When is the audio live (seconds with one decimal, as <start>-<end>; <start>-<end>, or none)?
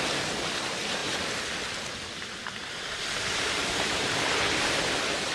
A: 0.0-2.6; 4.1-5.3